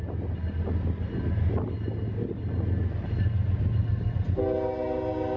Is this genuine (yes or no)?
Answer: yes